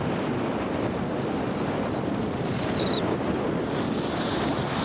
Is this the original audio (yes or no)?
yes